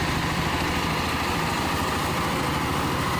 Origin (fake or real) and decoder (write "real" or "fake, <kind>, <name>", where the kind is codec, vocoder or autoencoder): real